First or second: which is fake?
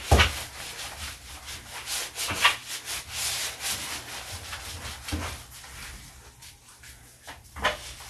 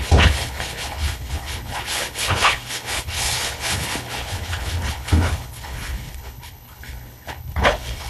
second